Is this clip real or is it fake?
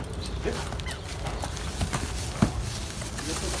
real